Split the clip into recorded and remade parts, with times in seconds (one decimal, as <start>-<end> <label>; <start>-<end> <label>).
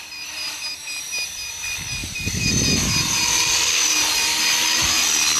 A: 0.0-2.0 recorded; 2.0-2.5 remade; 2.5-5.4 recorded